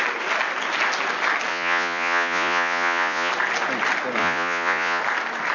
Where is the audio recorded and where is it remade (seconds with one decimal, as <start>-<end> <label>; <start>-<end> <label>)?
0.0-1.5 recorded; 1.5-3.3 remade; 3.3-4.2 recorded; 4.2-5.0 remade; 5.0-5.5 recorded